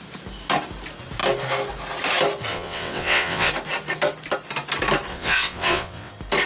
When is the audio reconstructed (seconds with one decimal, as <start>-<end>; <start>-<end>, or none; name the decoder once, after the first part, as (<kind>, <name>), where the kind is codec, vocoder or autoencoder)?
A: 2.5-3.5 (vocoder, WaveNeXt); 5.1-6.1